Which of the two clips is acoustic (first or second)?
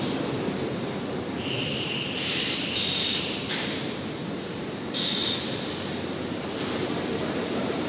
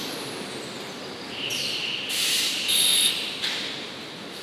second